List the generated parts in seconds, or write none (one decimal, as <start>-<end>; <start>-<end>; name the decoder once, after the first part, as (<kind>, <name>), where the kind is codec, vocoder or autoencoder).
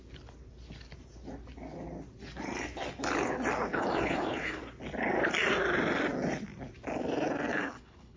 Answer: 3.7-4.6 (codec, HILCodec); 7.5-8.2